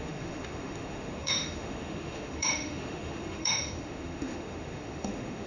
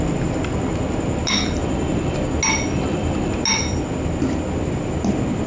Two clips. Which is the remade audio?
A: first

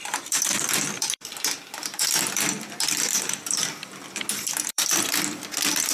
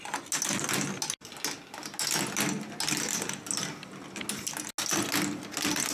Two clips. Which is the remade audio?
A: first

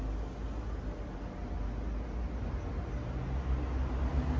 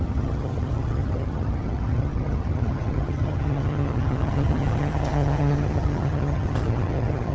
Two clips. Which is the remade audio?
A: second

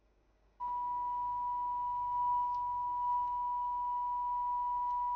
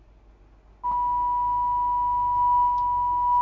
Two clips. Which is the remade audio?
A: first